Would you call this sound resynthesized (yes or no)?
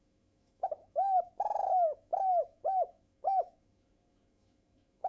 yes